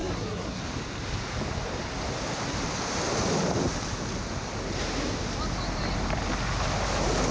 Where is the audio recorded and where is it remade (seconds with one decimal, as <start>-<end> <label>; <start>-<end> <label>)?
0.0-0.6 remade; 0.6-7.3 recorded